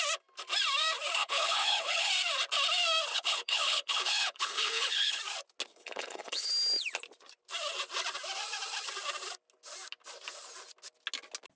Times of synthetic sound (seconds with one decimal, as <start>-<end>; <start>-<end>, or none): 1.2-2.1; 3.1-5.2; 5.7-6.5